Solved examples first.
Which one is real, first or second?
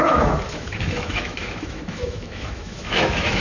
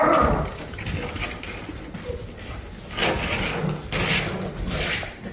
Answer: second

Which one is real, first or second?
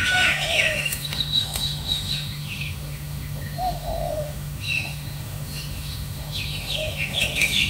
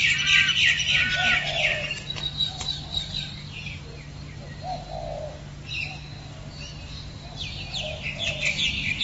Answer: second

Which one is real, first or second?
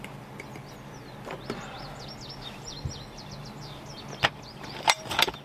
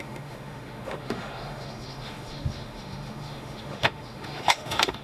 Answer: first